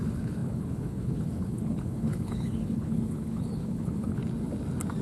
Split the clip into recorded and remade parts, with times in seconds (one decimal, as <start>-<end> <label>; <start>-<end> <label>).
0.0-4.2 remade; 4.2-5.0 recorded

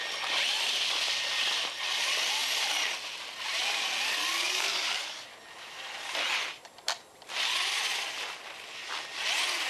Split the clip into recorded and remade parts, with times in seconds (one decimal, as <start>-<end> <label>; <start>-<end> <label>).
0.0-4.2 recorded; 4.2-5.2 remade; 5.2-9.7 recorded

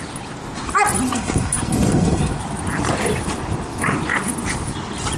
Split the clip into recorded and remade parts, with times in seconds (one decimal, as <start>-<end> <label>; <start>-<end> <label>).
0.0-1.1 recorded; 1.1-2.4 remade; 2.4-5.2 recorded

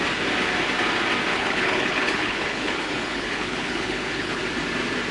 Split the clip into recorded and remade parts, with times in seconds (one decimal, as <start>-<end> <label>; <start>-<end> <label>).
0.0-1.3 recorded; 1.3-4.4 remade; 4.4-5.1 recorded